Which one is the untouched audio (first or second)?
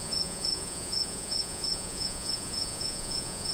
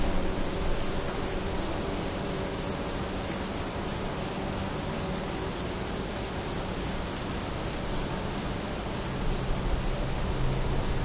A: second